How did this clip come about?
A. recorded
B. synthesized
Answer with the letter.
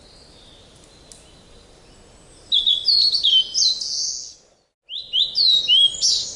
A